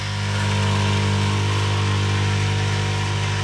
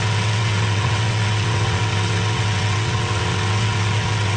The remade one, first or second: second